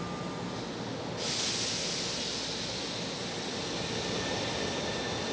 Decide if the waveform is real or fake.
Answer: real